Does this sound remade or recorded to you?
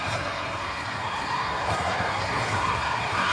remade